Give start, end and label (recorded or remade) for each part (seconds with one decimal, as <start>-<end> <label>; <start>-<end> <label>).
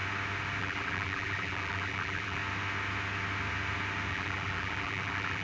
0.0-0.6 recorded; 0.6-2.4 remade; 2.4-4.1 recorded; 4.1-5.4 remade